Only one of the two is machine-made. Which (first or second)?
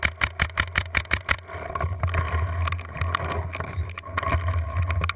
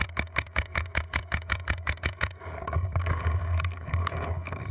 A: second